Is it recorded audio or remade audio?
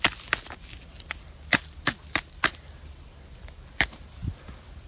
recorded